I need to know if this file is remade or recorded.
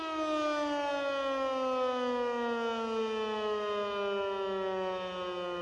recorded